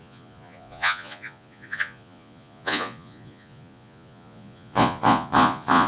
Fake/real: fake